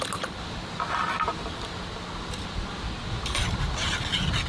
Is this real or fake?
real